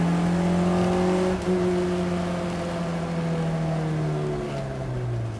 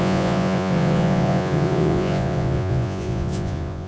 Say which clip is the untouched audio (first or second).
first